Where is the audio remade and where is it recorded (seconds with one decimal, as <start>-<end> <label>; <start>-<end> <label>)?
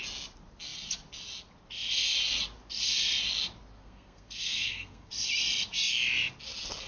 0.0-3.8 recorded; 3.8-5.1 remade; 5.1-6.9 recorded